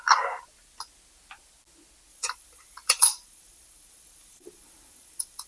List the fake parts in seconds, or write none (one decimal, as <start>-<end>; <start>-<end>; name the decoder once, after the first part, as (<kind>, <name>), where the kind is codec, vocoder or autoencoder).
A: 2.1-5.5 (vocoder, BigVGAN v2)